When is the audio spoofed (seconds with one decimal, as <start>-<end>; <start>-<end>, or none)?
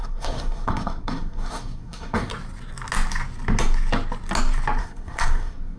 0.0-2.3; 4.8-5.8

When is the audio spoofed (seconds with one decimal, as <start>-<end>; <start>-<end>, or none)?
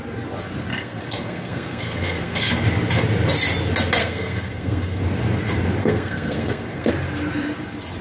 0.7-2.5; 4.0-5.0; 5.8-6.9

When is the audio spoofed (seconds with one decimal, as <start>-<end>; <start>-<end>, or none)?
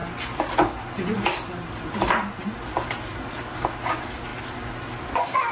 none